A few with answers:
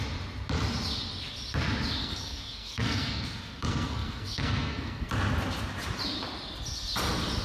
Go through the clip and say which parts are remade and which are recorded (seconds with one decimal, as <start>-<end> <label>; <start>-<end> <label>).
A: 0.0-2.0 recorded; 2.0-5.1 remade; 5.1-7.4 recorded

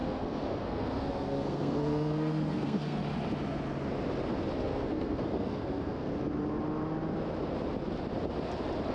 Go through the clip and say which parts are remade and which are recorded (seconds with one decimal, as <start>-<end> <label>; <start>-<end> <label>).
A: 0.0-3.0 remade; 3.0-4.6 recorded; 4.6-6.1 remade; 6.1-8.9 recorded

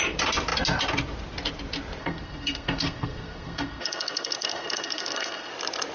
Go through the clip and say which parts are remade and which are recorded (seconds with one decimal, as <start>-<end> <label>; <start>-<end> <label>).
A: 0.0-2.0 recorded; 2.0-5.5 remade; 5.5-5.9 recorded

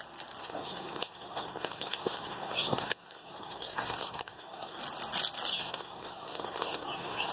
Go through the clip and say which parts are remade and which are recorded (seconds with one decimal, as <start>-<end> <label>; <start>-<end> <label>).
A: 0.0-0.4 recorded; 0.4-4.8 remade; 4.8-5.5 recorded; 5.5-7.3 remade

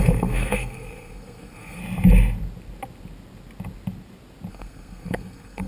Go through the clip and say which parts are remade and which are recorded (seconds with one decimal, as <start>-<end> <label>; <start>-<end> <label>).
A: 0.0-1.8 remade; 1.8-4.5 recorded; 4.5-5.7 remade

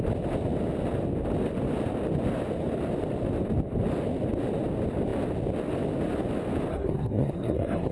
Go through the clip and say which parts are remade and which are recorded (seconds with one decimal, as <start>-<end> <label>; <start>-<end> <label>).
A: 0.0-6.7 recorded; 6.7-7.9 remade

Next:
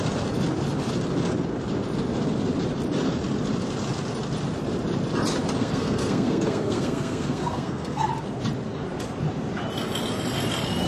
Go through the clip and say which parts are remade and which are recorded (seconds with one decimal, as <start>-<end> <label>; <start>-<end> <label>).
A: 0.0-5.6 recorded; 5.6-8.1 remade; 8.1-10.9 recorded